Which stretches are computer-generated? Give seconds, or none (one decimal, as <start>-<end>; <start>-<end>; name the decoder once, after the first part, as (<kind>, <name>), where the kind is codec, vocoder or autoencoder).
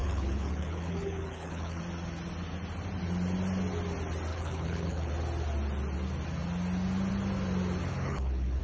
0.0-1.8 (codec, HILCodec); 4.3-5.1; 7.9-8.6